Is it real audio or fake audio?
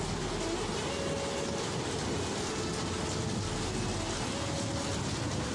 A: real